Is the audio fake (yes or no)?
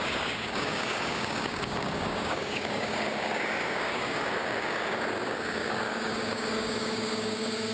yes